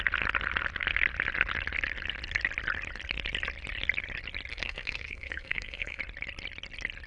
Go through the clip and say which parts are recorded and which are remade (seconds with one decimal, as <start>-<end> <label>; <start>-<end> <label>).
0.0-4.5 recorded; 4.5-6.0 remade; 6.0-7.1 recorded